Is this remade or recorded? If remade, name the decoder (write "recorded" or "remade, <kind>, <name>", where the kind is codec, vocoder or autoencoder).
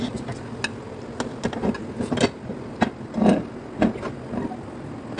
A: recorded